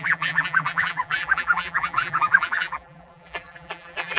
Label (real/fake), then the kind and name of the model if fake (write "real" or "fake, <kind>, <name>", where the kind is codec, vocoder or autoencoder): fake, vocoder, BigVGAN v2